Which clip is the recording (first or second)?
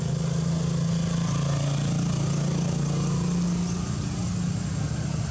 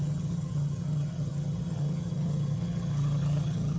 first